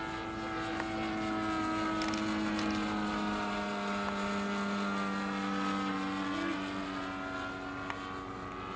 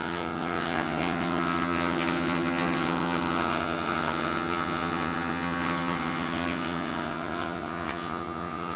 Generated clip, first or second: second